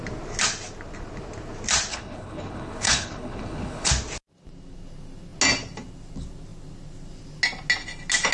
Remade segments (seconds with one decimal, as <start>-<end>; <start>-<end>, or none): 1.9-3.9